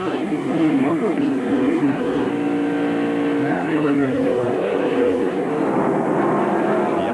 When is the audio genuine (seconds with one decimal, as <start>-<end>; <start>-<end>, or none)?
2.3-3.5; 5.5-7.1